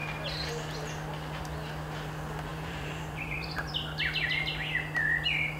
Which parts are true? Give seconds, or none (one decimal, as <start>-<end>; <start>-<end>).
0.0-2.5; 3.7-5.6